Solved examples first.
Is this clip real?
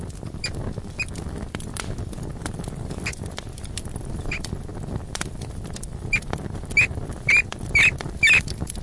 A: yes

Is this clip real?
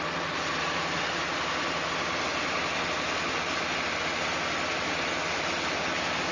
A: yes